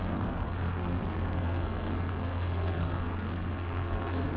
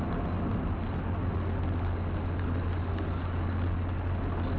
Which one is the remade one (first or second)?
first